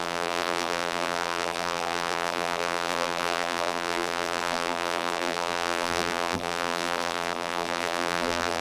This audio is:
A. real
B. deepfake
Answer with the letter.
B